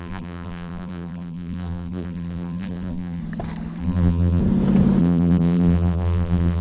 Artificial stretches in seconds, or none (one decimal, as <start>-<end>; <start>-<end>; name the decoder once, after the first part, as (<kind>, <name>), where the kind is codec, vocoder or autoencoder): 0.0-3.2 (vocoder, BigVGAN v2); 3.8-4.4; 5.0-6.6